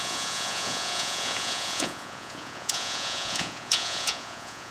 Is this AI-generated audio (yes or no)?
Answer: yes